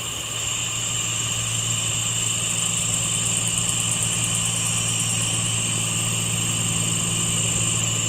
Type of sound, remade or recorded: recorded